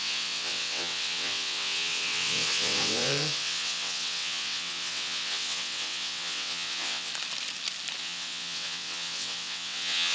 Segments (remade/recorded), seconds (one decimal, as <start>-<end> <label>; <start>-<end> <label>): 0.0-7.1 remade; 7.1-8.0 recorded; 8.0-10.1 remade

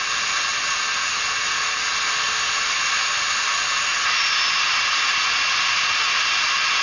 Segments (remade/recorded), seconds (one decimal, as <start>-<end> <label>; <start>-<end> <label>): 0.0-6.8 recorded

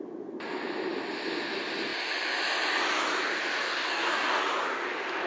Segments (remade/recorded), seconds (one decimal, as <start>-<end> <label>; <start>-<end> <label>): 0.0-3.6 recorded; 3.6-4.4 remade; 4.4-5.3 recorded